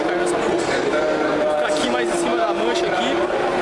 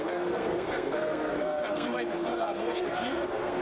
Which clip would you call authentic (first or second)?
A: first